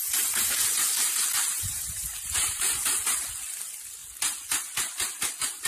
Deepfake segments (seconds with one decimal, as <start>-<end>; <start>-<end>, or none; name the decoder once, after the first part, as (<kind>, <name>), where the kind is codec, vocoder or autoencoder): 1.5-3.0 (vocoder, BigVGAN v2)